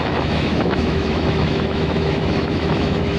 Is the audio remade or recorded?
remade